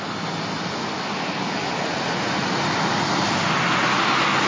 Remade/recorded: recorded